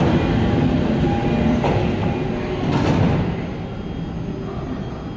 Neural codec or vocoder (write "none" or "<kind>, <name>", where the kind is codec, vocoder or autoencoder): none